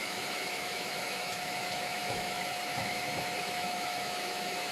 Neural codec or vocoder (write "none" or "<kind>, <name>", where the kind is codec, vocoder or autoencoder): autoencoder, DAC-VAE